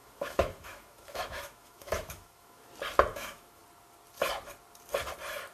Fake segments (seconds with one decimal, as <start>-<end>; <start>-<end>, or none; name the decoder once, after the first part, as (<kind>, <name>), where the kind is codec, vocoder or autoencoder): 0.0-2.7 (autoencoder, DAC-VAE); 3.1-3.6